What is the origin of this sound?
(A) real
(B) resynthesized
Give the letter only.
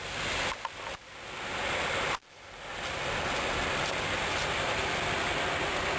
A